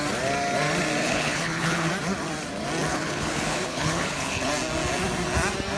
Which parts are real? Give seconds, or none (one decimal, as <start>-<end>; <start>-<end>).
0.0-1.0; 1.9-2.9; 4.5-5.8